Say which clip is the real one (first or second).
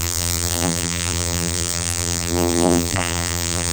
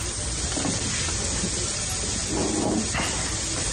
second